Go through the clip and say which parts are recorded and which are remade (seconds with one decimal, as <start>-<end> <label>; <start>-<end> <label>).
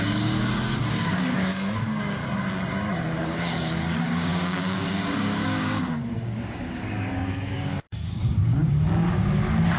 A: 0.0-2.2 remade; 2.2-3.2 recorded; 3.2-9.8 remade